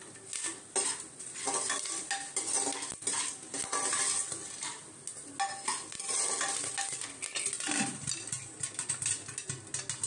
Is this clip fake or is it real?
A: real